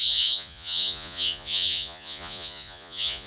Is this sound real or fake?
fake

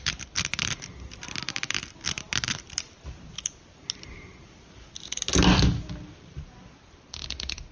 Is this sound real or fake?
real